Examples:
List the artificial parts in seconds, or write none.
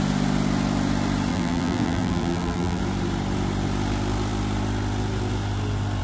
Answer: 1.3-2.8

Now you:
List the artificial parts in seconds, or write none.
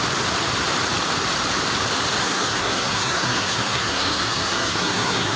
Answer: 2.2-5.4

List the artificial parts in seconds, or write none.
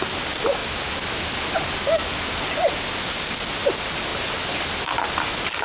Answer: none